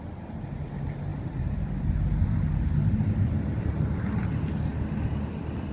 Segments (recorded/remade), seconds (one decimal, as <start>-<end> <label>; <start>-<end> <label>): 0.0-1.1 recorded; 1.1-3.6 remade; 3.6-4.7 recorded; 4.7-5.7 remade